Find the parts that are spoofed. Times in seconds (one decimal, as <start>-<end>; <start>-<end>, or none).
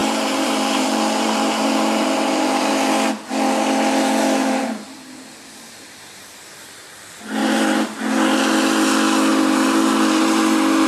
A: 0.0-2.7; 4.4-6.5; 7.4-8.0